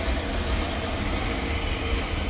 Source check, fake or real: real